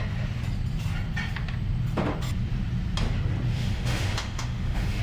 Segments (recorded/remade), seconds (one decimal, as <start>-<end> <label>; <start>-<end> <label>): 0.0-3.5 recorded; 3.5-5.0 remade